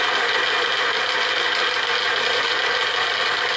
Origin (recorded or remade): recorded